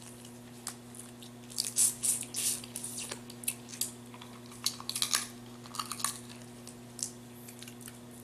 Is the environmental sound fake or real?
real